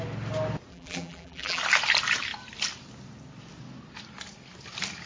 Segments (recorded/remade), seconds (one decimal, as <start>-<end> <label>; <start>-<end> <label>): 0.0-0.7 recorded; 0.7-1.6 remade; 1.6-5.1 recorded